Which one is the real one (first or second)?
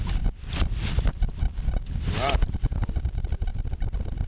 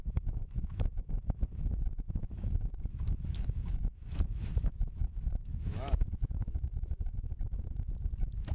first